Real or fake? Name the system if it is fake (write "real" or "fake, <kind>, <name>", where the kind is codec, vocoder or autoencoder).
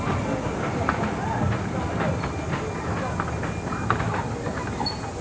real